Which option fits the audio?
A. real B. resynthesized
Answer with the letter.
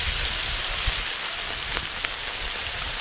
A